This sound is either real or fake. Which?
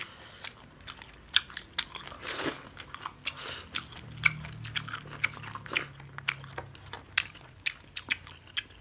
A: real